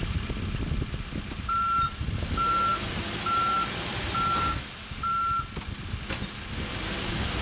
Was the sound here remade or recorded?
recorded